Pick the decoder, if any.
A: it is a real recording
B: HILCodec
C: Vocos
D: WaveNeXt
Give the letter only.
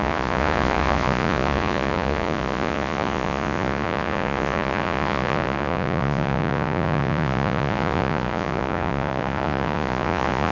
C